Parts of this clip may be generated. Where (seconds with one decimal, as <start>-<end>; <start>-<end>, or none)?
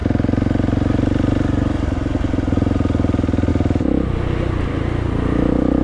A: none